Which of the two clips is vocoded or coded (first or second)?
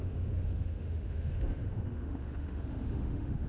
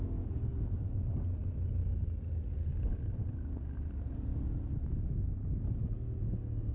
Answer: first